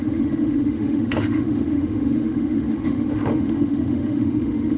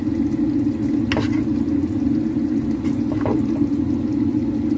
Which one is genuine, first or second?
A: second